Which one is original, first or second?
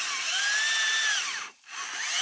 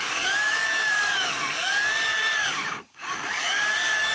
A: first